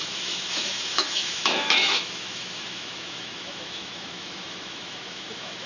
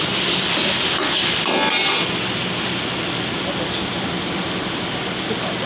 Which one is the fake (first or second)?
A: first